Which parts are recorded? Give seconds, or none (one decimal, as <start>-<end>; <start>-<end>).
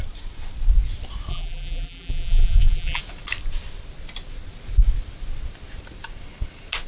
0.0-1.3; 3.0-6.9